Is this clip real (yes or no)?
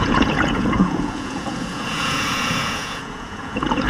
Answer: no